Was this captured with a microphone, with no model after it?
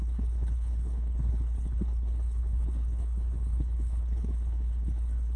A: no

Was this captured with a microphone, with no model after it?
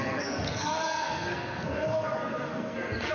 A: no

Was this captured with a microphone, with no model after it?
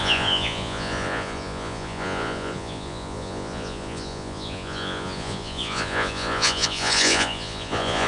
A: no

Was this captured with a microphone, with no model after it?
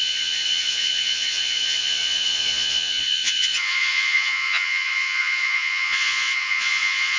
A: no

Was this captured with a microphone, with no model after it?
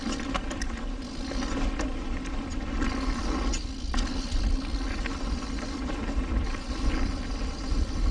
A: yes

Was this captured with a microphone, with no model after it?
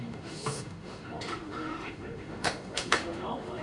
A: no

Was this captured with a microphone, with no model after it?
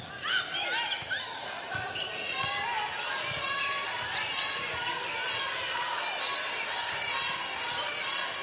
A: yes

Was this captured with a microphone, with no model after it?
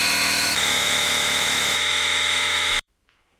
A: no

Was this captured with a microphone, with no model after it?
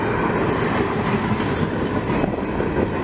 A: yes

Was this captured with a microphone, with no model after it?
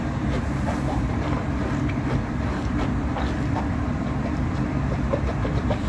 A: no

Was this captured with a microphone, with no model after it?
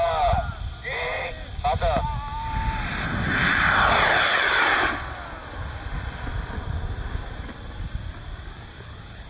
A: yes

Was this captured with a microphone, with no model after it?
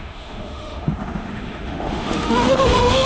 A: no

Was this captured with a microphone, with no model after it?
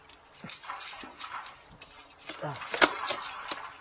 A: yes